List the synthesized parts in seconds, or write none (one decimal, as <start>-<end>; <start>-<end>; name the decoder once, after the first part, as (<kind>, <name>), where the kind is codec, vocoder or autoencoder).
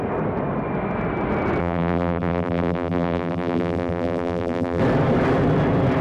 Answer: 1.6-4.8 (vocoder, BigVGAN v2)